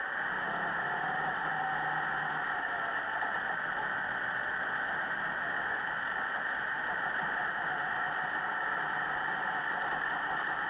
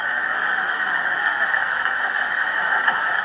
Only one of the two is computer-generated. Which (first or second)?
second